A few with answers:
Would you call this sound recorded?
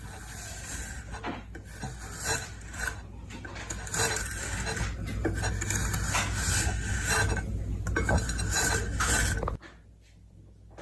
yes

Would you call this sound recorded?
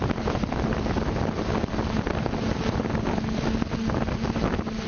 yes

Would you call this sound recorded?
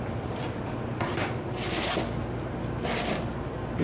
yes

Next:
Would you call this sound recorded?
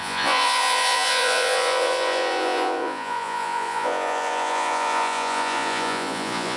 no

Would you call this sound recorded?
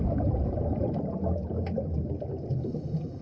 yes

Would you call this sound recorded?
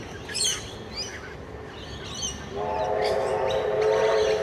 yes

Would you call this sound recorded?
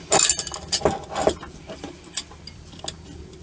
yes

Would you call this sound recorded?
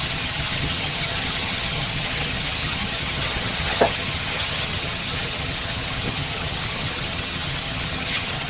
no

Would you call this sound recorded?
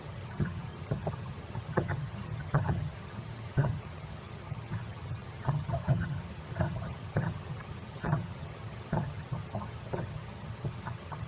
no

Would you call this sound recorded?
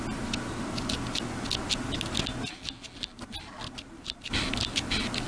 yes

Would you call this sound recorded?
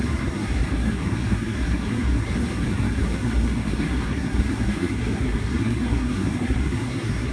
no